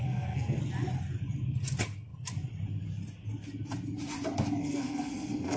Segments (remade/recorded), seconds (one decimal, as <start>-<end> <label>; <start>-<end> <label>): 0.0-0.6 remade; 0.6-4.6 recorded; 4.6-5.6 remade